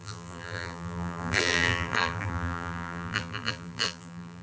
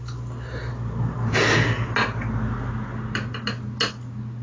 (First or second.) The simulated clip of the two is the first